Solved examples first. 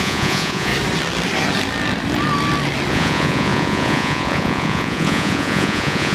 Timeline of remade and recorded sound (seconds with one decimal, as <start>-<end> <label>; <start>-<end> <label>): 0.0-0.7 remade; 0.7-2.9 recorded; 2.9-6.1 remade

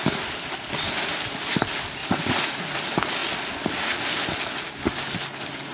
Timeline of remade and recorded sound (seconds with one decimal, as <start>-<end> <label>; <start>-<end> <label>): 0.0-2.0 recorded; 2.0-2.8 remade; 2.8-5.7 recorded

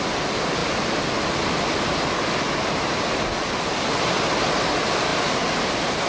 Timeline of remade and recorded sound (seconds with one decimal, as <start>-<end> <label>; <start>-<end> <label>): 0.0-6.1 recorded